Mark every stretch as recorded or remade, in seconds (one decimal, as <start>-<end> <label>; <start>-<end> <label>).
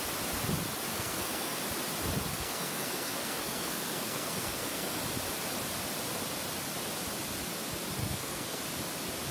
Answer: 0.0-0.9 recorded; 0.9-1.6 remade; 1.6-2.3 recorded; 2.3-5.0 remade; 5.0-8.0 recorded; 8.0-8.6 remade; 8.6-9.3 recorded